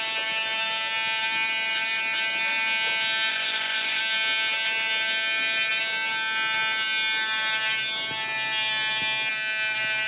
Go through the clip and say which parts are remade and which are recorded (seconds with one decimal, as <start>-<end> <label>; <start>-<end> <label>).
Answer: 0.0-3.3 recorded; 3.3-4.0 remade; 4.0-10.1 recorded